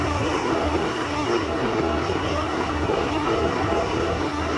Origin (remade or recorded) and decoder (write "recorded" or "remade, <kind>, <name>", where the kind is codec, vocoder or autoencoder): remade, codec, SNAC